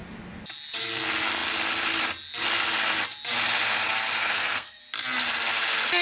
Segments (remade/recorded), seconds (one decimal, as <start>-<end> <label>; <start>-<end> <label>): 0.0-4.2 recorded; 4.2-4.8 remade; 4.8-6.0 recorded